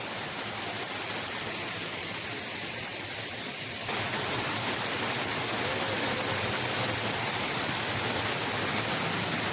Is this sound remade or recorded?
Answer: recorded